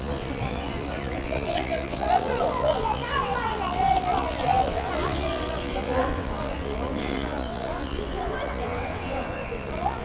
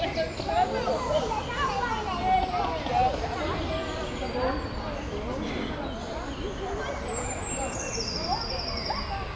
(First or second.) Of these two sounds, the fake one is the first